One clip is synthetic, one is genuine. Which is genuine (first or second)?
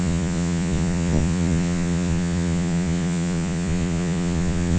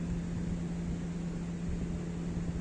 second